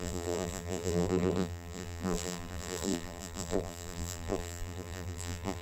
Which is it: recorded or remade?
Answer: remade